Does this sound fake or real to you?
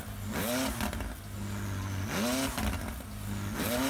real